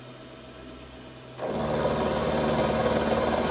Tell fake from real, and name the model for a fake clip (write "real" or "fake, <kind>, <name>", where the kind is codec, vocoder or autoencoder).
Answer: real